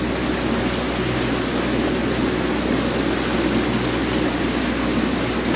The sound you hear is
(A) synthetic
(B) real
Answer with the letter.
B